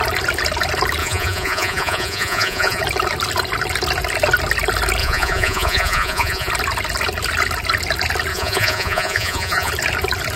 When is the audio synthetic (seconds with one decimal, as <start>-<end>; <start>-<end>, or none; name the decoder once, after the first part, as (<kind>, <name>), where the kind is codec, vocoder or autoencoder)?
1.0-2.8 (vocoder, Vocos); 5.0-6.5; 8.3-9.7